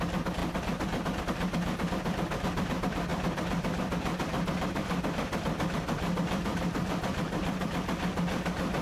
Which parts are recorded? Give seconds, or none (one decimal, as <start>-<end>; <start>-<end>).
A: 0.0-6.5; 7.7-8.8